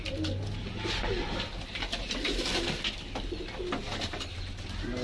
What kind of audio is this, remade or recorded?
recorded